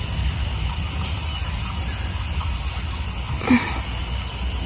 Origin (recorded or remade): recorded